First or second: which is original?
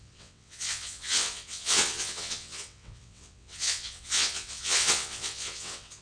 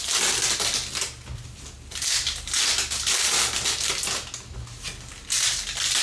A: second